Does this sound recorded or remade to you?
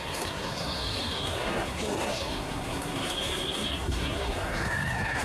remade